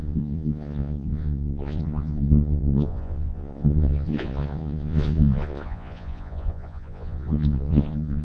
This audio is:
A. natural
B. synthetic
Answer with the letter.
B